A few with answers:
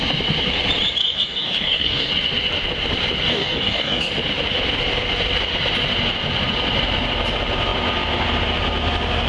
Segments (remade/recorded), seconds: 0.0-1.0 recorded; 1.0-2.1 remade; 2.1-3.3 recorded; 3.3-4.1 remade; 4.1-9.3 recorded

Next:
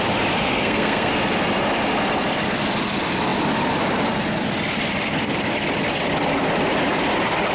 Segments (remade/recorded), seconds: 0.0-0.4 recorded; 0.4-1.1 remade; 1.1-7.5 recorded